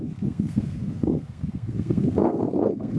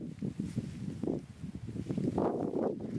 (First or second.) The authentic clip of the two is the second